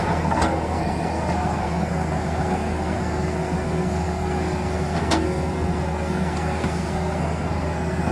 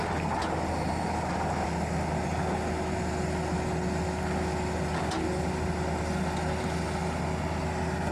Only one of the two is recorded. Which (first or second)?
second